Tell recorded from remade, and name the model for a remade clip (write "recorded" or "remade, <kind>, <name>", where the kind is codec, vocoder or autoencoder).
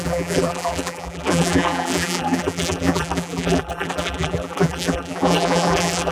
remade, vocoder, BigVGAN v2